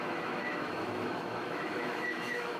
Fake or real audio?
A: fake